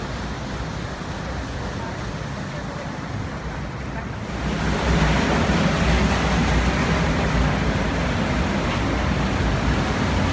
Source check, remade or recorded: recorded